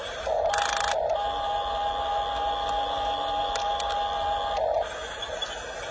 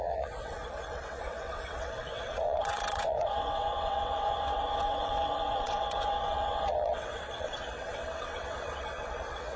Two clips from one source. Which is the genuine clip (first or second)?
first